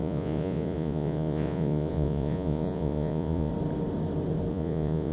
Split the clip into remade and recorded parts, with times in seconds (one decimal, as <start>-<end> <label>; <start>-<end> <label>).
0.0-3.5 remade; 3.5-4.5 recorded; 4.5-5.1 remade